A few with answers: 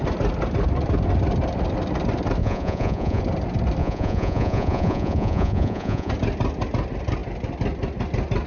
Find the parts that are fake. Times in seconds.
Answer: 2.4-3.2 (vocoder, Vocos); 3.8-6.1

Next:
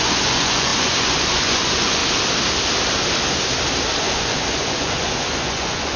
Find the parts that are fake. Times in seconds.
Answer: 0.0-2.0 (vocoder, Vocos); 4.0-6.0

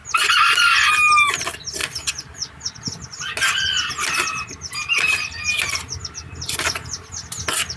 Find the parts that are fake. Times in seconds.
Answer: none